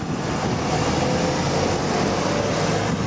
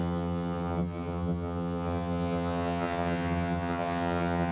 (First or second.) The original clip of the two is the first